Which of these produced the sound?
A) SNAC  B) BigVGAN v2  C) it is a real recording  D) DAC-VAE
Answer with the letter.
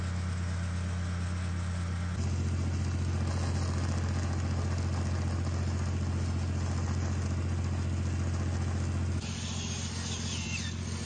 C